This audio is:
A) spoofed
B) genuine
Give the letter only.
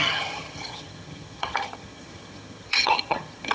A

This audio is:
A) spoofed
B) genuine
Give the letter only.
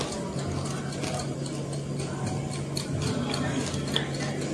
B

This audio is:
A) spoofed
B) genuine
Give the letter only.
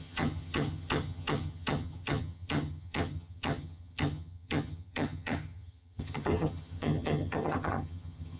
A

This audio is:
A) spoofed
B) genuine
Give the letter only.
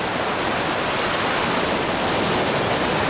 B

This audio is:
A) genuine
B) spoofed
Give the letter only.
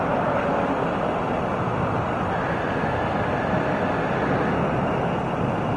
A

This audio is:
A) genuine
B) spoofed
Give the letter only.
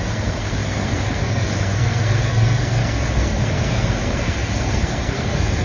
B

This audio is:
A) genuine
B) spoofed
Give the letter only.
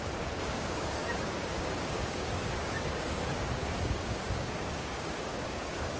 B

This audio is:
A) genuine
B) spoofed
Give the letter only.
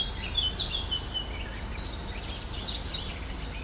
A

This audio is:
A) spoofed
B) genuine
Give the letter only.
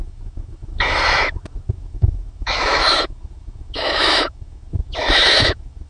A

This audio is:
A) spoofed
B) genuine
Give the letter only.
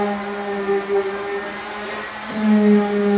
B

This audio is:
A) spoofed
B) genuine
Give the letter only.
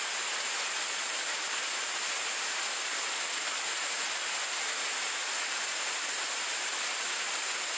B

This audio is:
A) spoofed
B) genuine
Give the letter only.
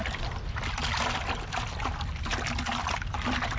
B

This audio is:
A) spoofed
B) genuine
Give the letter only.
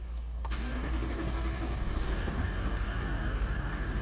A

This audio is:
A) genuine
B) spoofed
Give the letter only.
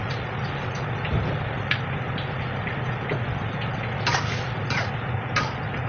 A